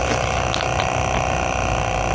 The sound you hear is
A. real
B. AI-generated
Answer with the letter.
A